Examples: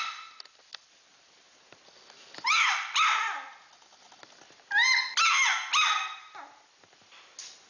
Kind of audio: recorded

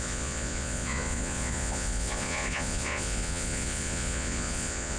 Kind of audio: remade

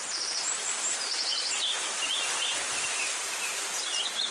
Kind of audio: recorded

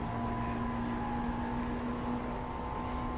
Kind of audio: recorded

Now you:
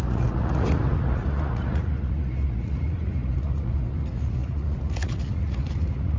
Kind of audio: remade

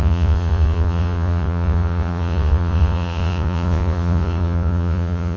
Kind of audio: remade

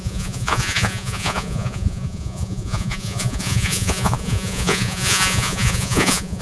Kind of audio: remade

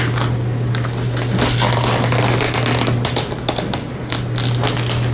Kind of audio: recorded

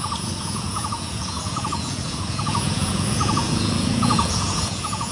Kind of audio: remade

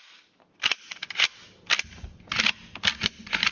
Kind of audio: recorded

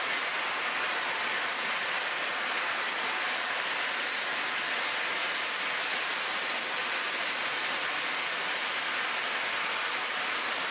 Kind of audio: recorded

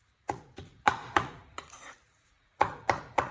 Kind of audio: remade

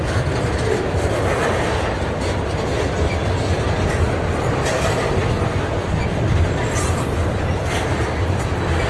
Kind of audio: recorded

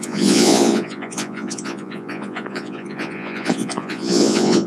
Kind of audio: remade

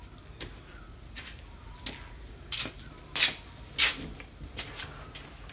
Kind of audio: recorded